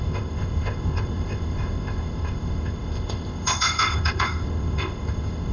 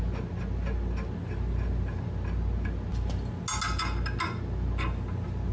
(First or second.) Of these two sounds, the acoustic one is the second